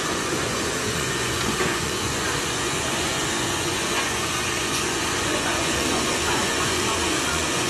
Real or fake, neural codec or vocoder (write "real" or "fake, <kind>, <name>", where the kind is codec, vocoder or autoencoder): fake, vocoder, Vocos